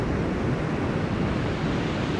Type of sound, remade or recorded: recorded